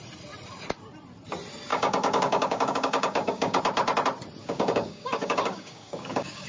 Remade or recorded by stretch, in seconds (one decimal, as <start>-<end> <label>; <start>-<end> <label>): 0.0-1.7 recorded; 1.7-3.6 remade; 3.6-4.4 recorded; 4.4-6.5 remade